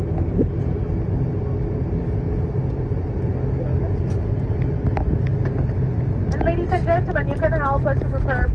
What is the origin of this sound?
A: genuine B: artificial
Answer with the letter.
A